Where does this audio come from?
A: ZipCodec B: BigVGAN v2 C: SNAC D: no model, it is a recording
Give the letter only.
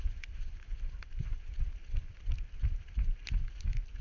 D